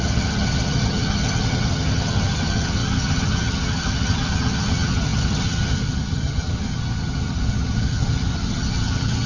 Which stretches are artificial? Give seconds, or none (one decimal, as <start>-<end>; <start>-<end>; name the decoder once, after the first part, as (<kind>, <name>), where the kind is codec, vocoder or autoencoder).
0.0-9.3 (vocoder, HiFi-GAN)